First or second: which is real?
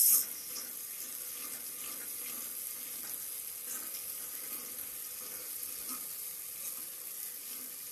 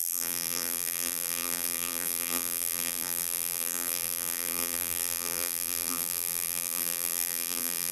first